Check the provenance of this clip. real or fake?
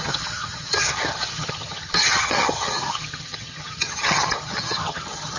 fake